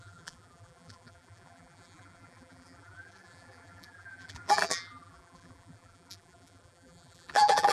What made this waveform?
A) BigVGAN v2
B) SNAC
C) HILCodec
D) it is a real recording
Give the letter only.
A